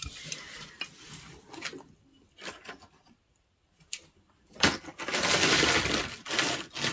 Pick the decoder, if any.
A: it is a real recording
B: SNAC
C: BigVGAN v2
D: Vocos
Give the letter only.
A